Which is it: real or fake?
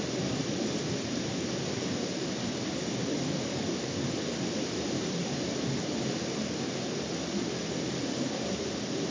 real